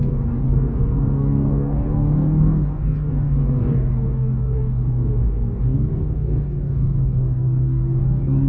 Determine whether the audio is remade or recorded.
remade